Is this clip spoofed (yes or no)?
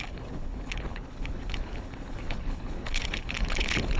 yes